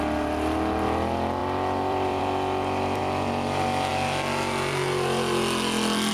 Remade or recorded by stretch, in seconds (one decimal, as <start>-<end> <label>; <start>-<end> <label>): 0.0-1.4 recorded; 1.4-2.2 remade; 2.2-3.0 recorded; 3.0-3.9 remade; 3.9-6.1 recorded